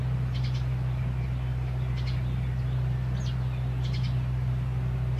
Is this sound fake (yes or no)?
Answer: no